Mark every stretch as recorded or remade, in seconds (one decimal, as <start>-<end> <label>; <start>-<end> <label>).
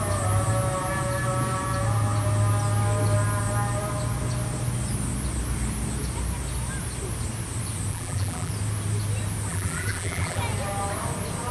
0.0-7.9 recorded; 7.9-8.5 remade; 8.5-9.5 recorded; 9.5-10.4 remade; 10.4-11.5 recorded